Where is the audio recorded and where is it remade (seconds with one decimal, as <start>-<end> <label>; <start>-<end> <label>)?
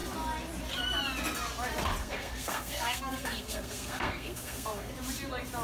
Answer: 0.0-2.0 recorded; 2.0-4.9 remade; 4.9-5.6 recorded